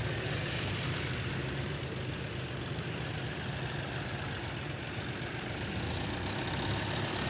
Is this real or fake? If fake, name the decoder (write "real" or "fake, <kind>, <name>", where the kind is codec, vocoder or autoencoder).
fake, vocoder, BigVGAN v2